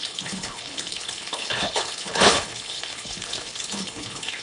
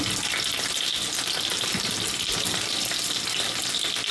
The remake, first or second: first